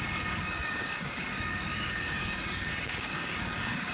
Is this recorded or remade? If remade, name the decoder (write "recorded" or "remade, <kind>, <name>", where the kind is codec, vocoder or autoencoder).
remade, codec, DAC